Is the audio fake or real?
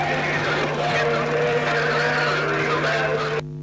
real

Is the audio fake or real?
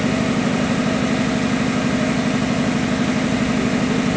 real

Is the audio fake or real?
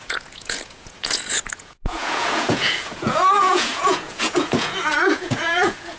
fake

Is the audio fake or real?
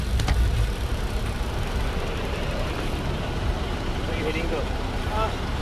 fake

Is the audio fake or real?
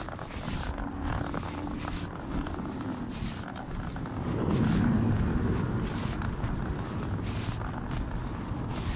real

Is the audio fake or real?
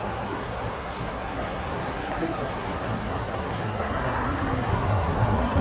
fake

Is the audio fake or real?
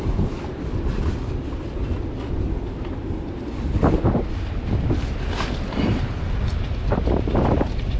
real